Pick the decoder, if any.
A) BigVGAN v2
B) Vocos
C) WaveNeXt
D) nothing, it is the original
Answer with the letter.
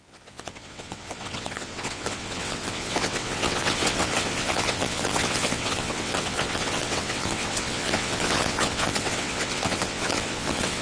C